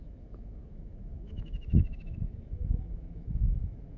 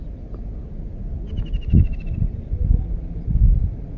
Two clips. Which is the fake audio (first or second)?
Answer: first